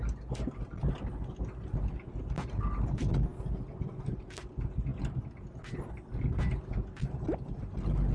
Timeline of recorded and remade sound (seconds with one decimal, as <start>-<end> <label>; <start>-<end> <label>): 0.0-8.1 recorded